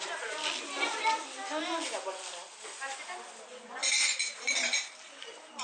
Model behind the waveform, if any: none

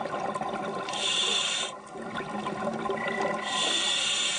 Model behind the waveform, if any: none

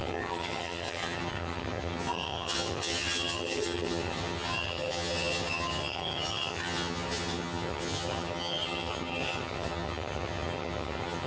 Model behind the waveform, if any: vocoder, HiFi-GAN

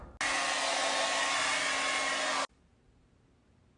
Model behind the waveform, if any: none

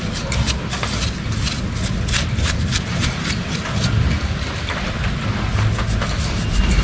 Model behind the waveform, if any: none